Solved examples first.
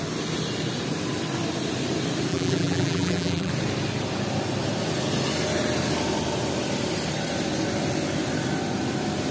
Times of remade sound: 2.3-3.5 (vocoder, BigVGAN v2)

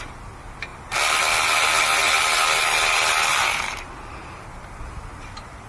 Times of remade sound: none

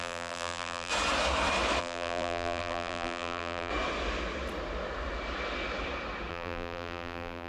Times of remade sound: 0.0-0.9 (vocoder, BigVGAN v2); 1.8-3.7; 6.3-7.5

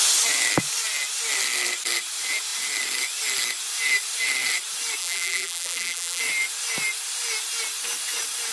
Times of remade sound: 5.0-6.2 (vocoder, BigVGAN v2)

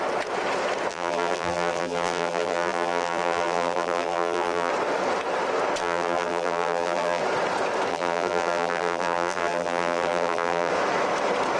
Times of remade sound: 0.9-4.7 (vocoder, BigVGAN v2); 5.8-7.2; 7.9-10.7

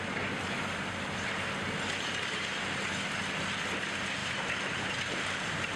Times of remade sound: 4.2-5.8 (vocoder, BigVGAN v2)